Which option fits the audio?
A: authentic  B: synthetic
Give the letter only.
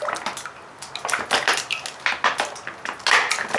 A